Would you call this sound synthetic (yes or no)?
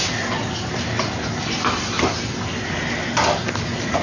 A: no